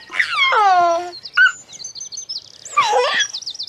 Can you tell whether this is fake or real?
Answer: real